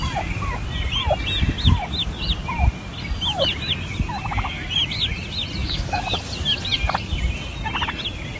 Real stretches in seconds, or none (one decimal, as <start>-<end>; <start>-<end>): 0.0-5.6; 6.2-8.4